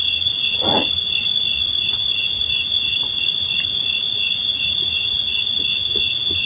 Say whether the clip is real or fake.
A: fake